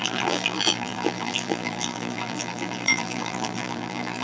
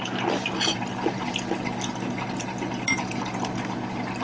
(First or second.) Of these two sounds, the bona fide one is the second